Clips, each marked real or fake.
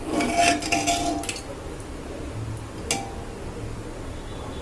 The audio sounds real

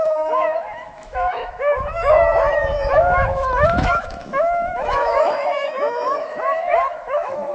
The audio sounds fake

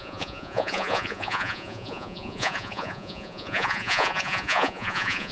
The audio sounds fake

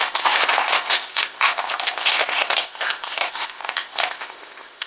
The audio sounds fake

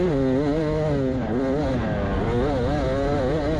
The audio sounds real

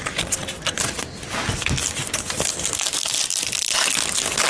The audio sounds real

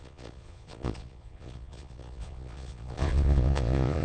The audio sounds fake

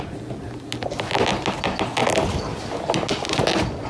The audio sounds real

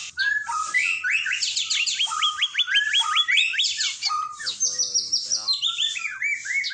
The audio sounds real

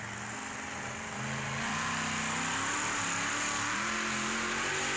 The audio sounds real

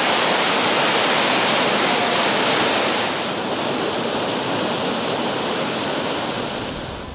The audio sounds real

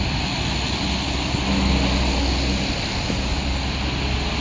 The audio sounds real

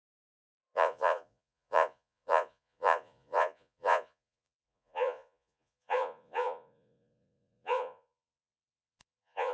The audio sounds fake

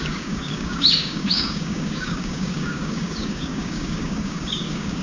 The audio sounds fake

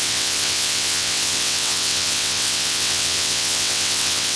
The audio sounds fake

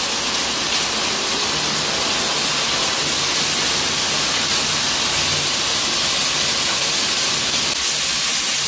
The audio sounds real